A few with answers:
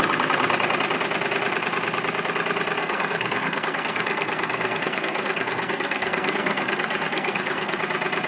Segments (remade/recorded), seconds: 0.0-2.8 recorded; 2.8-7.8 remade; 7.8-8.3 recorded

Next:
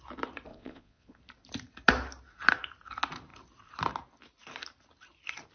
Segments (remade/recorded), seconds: 0.0-0.5 recorded; 0.5-1.2 remade; 1.2-5.5 recorded

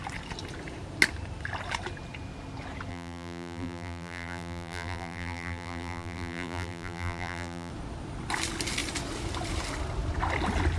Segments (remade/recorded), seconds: 0.0-2.9 recorded; 2.9-7.7 remade; 7.7-10.8 recorded